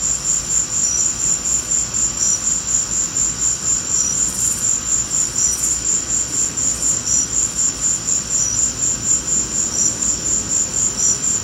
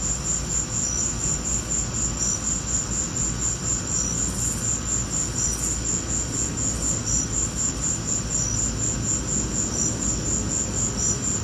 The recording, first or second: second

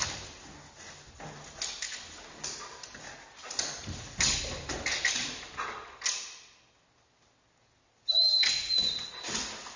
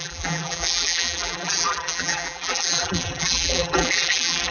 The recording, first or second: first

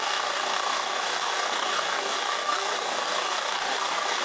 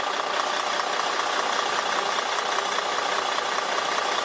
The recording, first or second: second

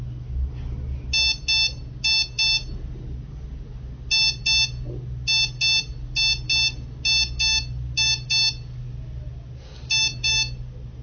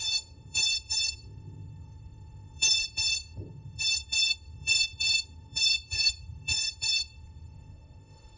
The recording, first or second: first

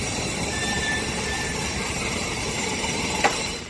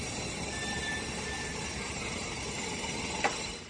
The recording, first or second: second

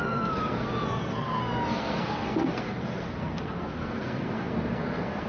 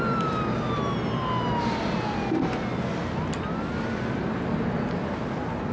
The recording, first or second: second